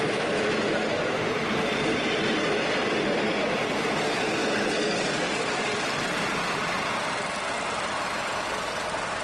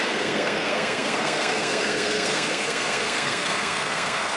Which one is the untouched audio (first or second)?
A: first